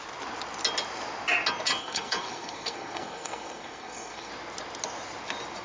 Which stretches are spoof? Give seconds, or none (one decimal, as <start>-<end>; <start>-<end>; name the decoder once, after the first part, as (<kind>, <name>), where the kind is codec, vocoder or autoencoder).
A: 1.8-4.3 (codec, SNAC)